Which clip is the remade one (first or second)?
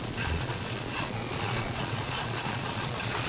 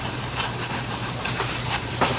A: first